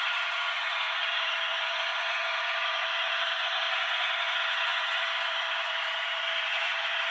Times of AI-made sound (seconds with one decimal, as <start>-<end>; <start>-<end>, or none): 0.0-7.1